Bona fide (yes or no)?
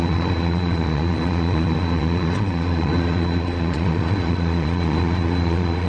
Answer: no